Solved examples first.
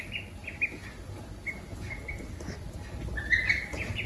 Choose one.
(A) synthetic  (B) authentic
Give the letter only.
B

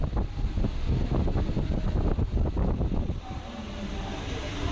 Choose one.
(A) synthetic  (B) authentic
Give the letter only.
B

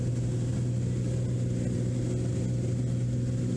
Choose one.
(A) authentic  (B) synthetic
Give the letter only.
A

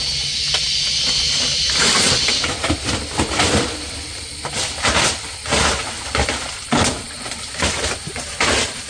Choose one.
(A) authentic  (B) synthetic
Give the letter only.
B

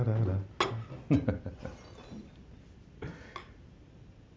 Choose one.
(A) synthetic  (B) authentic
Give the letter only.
B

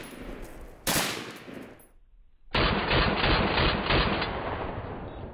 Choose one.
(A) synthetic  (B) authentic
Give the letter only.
B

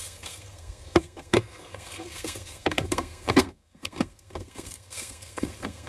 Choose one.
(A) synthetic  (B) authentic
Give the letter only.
A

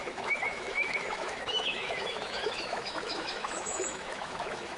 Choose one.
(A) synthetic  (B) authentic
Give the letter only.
A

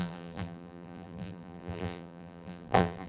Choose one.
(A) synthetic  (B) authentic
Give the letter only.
A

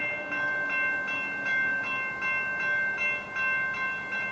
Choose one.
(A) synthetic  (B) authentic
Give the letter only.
B